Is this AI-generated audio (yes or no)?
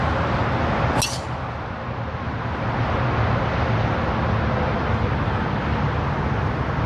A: no